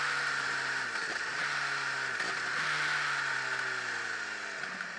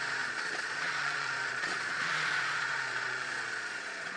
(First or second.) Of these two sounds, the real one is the first